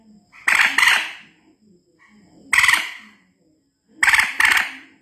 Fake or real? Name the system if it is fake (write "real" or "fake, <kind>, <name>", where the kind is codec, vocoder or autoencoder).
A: real